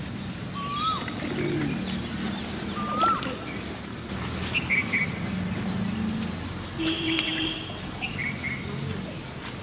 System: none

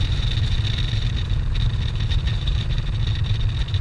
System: none